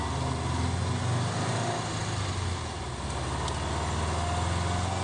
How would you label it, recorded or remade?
recorded